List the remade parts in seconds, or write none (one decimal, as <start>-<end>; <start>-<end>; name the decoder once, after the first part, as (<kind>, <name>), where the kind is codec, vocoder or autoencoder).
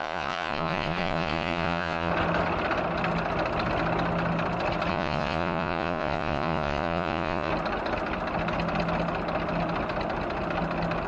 0.0-2.1 (vocoder, Vocos); 4.9-7.5